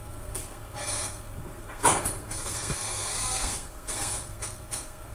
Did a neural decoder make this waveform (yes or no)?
yes